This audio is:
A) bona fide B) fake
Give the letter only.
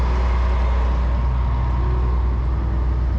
A